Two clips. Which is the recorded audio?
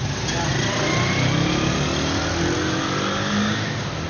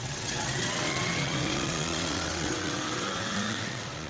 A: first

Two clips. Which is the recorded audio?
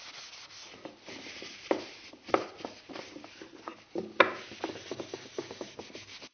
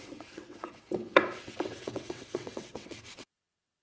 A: first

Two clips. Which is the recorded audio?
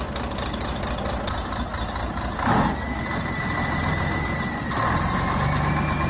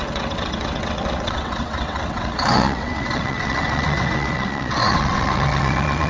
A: first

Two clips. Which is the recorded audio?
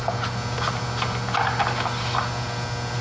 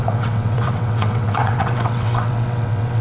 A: first